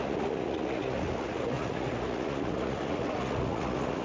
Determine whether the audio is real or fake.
fake